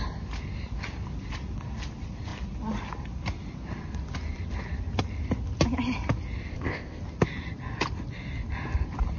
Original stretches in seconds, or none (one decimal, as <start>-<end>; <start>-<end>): 0.0-6.5; 7.0-9.2